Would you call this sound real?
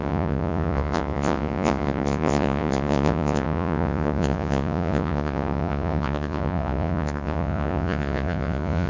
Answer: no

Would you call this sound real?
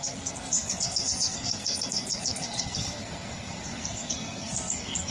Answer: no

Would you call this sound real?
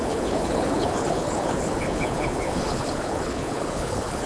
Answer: no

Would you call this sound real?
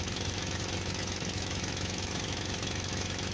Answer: no